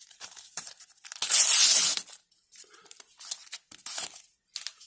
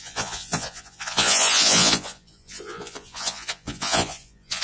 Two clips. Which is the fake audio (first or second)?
second